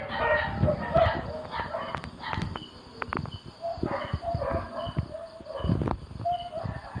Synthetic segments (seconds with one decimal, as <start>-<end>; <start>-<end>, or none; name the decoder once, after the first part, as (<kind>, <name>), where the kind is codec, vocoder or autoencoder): none

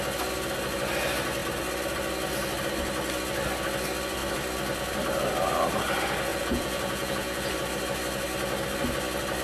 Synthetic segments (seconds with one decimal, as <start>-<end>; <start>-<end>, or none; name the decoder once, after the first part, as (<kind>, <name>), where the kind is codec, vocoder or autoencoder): 6.3-7.5 (vocoder, Vocos)